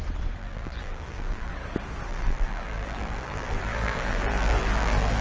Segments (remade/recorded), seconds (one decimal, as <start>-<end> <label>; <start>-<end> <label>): 0.0-0.4 recorded; 0.4-1.5 remade; 1.5-2.1 recorded; 2.1-5.2 remade